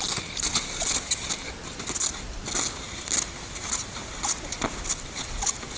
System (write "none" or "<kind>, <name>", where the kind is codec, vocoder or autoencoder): none